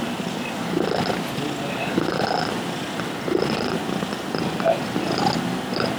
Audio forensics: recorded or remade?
recorded